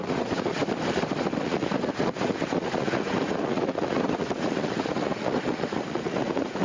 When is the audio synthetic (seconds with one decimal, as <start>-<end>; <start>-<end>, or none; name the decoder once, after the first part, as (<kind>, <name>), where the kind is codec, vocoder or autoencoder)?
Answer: 0.0-0.6 (vocoder, Vocos); 1.4-6.6